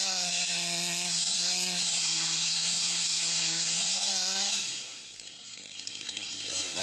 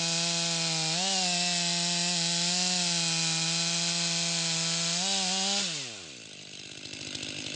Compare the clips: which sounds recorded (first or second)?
second